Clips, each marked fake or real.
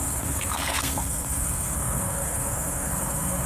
fake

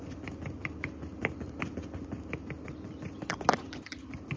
real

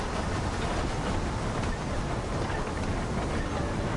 real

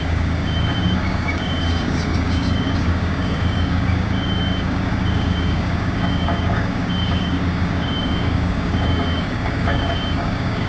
fake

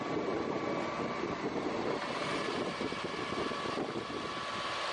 real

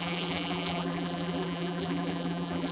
fake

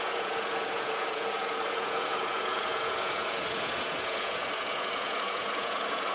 fake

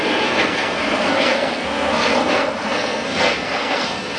fake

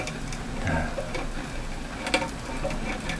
real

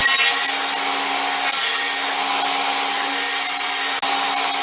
real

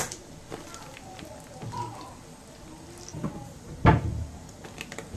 real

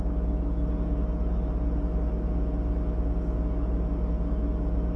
fake